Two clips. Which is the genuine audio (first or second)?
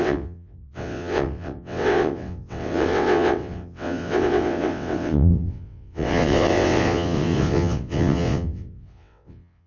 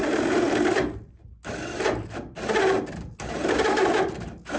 second